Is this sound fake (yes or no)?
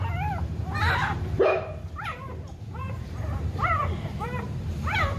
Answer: yes